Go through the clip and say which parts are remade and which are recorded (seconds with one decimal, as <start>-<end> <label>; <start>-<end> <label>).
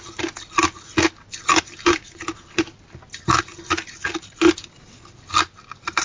0.0-6.0 recorded